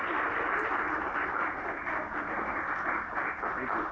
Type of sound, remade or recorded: recorded